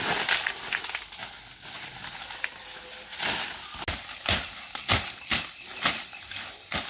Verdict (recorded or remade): recorded